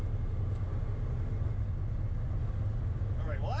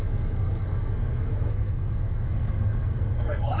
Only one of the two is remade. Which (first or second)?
second